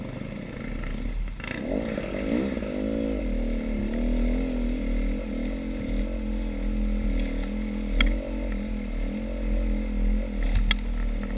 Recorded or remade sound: recorded